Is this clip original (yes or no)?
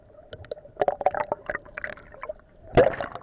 yes